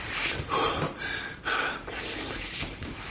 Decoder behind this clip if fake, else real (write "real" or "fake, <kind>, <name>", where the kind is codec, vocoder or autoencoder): fake, vocoder, BigVGAN v2